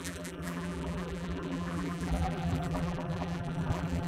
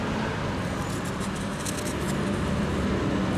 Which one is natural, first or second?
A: second